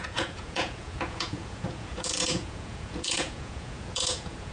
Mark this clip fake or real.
fake